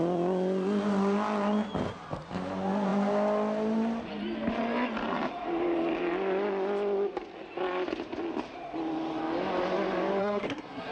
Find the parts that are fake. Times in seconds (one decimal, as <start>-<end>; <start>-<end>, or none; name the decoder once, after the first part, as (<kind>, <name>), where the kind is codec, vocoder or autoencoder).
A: 10.2-10.9 (codec, SNAC)